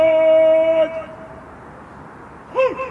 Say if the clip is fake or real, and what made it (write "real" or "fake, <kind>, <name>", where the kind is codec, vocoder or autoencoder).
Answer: real